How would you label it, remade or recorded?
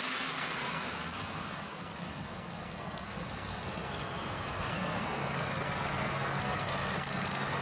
remade